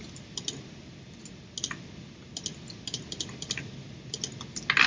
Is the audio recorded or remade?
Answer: recorded